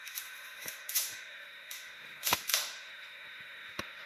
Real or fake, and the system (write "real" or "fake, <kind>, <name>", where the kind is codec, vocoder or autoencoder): fake, autoencoder, DAC-VAE